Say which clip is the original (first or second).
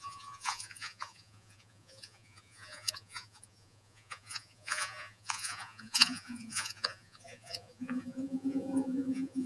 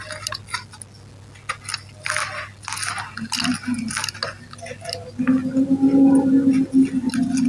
second